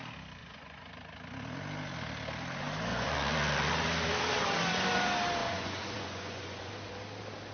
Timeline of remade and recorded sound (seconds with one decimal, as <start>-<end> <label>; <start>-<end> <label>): 0.0-0.4 recorded; 0.4-0.9 remade; 0.9-2.9 recorded; 2.9-3.7 remade; 3.7-5.4 recorded; 5.4-6.7 remade; 6.7-7.5 recorded